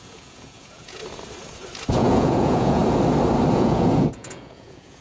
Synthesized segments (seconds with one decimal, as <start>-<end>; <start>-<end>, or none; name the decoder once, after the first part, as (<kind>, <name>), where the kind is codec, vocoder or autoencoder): 0.0-1.0 (vocoder, Vocos); 1.9-2.8; 3.5-5.0